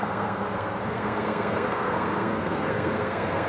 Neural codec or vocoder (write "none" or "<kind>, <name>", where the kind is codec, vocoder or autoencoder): codec, SNAC